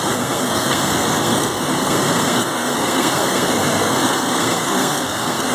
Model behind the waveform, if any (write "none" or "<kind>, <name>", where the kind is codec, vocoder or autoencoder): codec, SNAC